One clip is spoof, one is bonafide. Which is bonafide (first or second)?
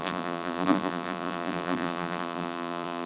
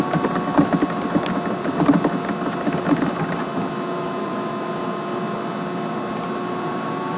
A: second